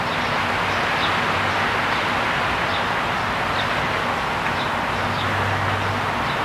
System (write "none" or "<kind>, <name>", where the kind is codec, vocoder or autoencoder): none